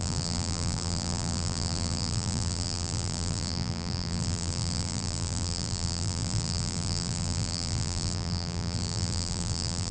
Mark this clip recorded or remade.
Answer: remade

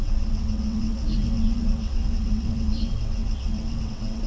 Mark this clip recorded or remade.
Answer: remade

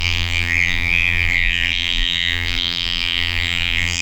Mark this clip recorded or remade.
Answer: remade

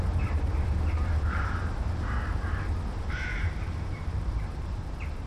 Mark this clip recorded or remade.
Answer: remade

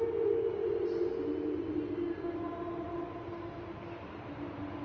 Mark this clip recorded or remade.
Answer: recorded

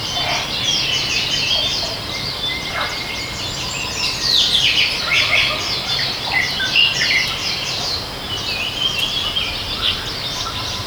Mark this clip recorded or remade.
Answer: recorded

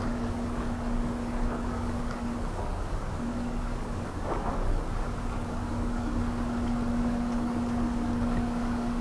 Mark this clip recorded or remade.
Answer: remade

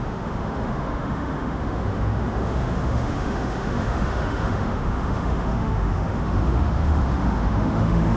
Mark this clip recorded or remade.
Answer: remade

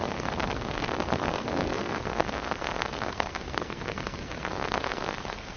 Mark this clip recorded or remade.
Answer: remade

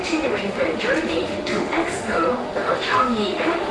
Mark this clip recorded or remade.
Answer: remade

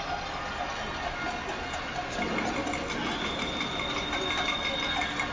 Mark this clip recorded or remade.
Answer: recorded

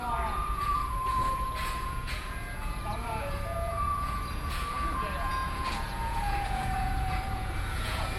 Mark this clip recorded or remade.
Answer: remade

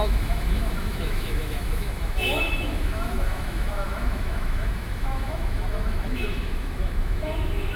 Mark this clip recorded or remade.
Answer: remade